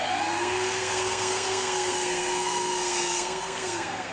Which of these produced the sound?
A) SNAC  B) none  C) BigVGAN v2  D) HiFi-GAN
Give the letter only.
A